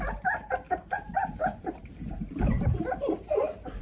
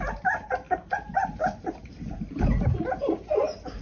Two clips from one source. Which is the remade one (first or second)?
first